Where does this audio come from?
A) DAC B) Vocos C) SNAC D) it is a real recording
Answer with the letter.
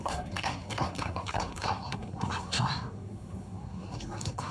C